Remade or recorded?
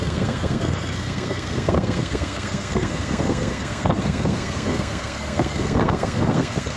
remade